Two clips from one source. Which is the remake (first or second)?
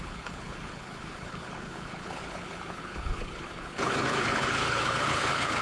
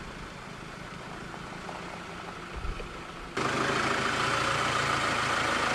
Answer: first